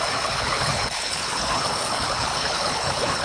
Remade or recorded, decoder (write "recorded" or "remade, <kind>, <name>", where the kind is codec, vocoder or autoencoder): remade, codec, HILCodec